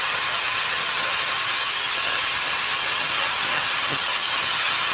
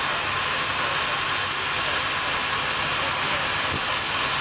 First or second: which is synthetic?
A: first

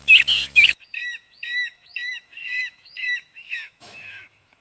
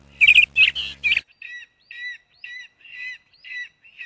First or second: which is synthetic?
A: first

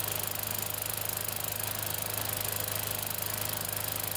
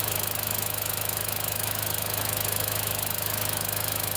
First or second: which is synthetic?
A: second